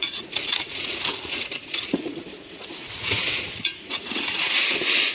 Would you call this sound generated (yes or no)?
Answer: yes